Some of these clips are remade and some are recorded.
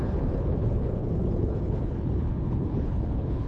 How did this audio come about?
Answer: remade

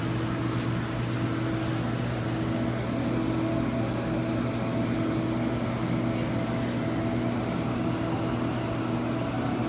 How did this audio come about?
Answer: recorded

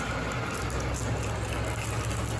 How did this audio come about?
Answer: recorded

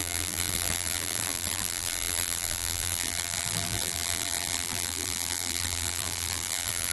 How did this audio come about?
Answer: remade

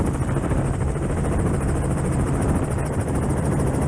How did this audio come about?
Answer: remade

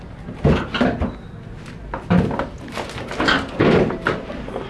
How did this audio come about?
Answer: recorded